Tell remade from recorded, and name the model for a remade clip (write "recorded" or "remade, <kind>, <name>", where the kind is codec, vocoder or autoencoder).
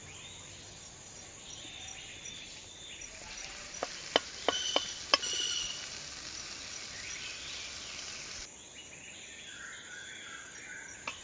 recorded